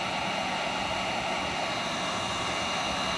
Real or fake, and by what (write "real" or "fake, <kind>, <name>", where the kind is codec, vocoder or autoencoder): real